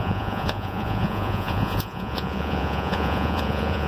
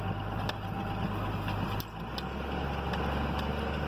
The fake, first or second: first